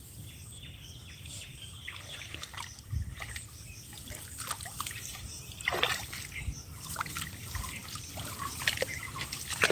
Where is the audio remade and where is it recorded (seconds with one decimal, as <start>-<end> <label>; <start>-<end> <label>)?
0.0-9.7 recorded